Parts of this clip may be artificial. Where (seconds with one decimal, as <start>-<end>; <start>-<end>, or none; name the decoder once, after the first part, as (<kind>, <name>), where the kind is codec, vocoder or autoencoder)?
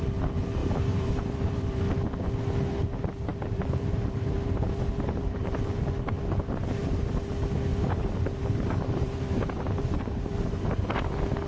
0.6-1.8 (vocoder, BigVGAN v2); 3.3-5.8; 7.7-11.0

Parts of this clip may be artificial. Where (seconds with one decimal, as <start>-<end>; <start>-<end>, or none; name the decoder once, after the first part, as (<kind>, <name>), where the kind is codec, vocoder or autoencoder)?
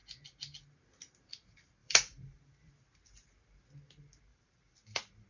1.8-2.7 (vocoder, BigVGAN v2); 4.3-5.3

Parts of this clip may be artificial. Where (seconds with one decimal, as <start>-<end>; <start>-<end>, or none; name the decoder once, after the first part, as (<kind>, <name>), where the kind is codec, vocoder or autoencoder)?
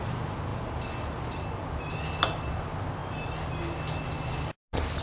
none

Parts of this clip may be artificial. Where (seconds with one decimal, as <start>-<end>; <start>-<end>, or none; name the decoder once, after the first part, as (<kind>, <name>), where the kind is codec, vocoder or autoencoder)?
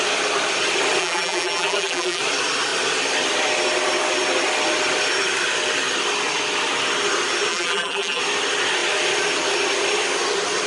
1.0-2.2 (vocoder, BigVGAN v2); 7.5-8.2